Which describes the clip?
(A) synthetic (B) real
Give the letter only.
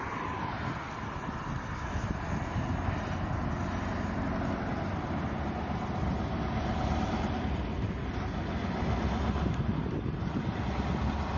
B